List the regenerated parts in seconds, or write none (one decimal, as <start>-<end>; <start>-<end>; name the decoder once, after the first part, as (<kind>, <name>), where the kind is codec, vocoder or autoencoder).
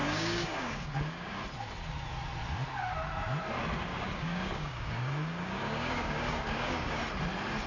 0.0-1.3 (codec, DAC); 3.9-7.0